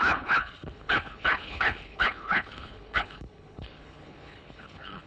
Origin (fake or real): fake